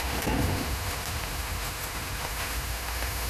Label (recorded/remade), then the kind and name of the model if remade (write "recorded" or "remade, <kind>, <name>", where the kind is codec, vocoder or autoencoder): remade, autoencoder, DAC-VAE